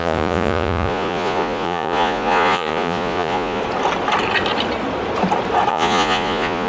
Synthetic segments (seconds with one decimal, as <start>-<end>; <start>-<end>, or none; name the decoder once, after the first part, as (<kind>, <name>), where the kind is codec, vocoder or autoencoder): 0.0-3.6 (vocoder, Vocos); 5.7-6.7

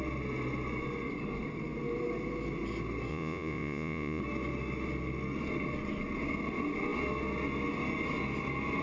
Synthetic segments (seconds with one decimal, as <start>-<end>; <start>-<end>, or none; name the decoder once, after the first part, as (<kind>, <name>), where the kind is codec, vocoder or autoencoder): 3.1-4.2 (vocoder, Vocos)

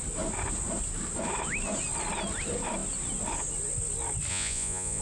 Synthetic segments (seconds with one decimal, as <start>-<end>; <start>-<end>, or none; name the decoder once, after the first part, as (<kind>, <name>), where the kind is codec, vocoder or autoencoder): 4.3-5.0 (vocoder, Vocos)

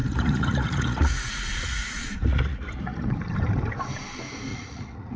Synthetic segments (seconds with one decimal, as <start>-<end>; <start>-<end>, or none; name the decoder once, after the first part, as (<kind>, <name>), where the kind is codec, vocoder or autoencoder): 0.0-3.1 (vocoder, Vocos); 4.5-5.2

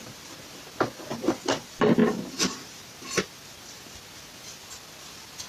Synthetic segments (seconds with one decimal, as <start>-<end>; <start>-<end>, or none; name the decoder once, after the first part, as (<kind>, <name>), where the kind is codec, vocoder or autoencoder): none